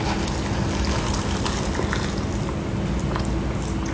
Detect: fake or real real